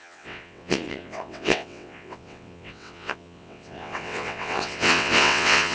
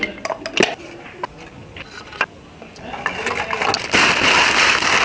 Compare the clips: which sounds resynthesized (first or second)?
first